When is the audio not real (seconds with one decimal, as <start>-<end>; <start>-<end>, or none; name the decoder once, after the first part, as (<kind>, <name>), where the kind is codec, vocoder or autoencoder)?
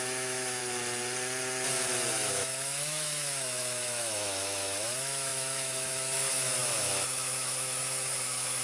0.0-0.6 (autoencoder, DAC-VAE); 2.1-8.6